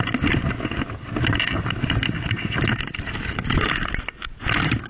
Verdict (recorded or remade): recorded